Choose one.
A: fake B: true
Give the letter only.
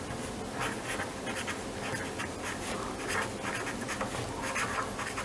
B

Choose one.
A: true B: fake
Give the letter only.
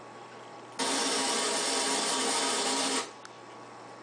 A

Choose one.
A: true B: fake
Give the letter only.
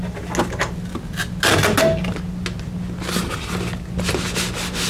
A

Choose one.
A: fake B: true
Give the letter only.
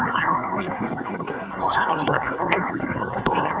A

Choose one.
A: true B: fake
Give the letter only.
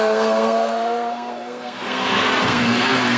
B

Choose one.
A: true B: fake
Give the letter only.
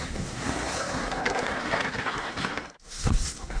B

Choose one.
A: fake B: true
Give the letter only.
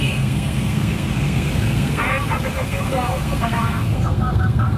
A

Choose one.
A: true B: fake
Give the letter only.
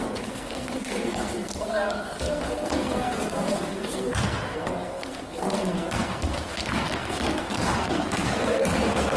B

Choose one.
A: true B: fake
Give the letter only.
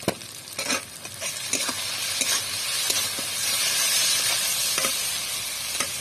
A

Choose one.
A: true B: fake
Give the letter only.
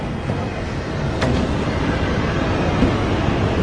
A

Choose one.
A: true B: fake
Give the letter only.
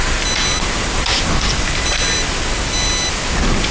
A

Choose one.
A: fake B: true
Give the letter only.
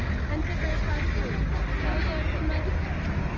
B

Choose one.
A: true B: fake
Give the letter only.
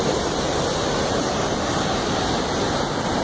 A